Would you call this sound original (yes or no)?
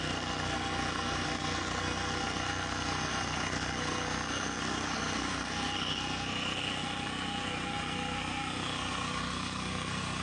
no